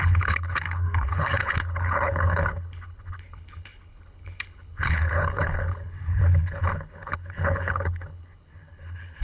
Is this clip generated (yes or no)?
yes